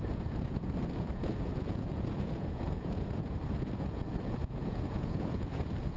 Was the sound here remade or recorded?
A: remade